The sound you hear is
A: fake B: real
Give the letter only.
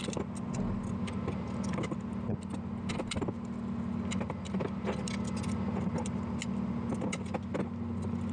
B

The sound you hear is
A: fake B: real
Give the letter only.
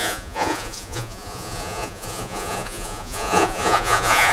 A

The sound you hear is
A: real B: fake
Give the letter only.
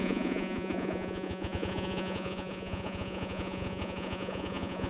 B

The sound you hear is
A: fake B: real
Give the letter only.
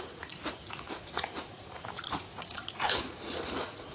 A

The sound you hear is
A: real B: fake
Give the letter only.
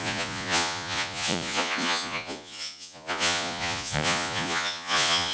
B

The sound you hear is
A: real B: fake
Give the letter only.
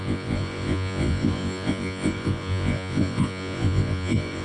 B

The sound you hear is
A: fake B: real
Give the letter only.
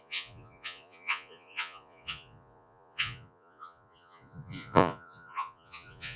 A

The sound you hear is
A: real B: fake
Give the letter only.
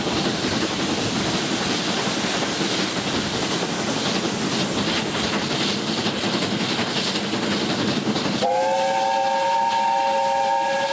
A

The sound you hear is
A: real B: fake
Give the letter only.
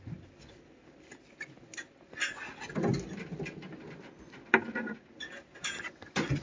A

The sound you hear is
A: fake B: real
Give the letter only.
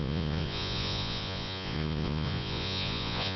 A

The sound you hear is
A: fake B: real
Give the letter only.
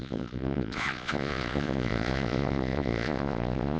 A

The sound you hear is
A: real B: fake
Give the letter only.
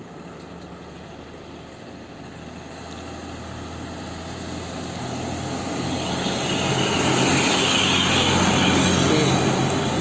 A